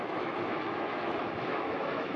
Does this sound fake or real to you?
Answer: fake